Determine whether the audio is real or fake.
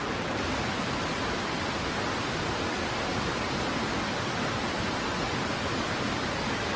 real